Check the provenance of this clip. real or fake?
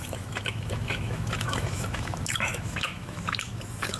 fake